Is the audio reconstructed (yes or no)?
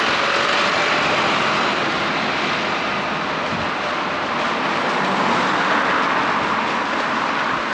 no